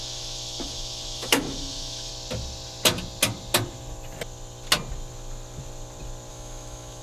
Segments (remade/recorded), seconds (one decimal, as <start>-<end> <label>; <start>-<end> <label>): 0.0-2.1 remade; 2.1-6.3 recorded; 6.3-7.0 remade